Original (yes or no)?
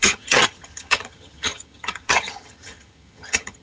no